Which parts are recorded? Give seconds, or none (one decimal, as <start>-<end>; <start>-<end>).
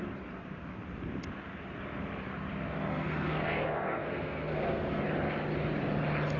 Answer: 0.0-2.9; 5.0-6.4